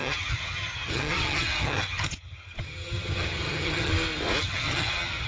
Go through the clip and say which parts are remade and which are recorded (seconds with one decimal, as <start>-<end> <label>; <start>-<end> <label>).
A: 0.0-3.9 remade; 3.9-4.4 recorded; 4.4-5.3 remade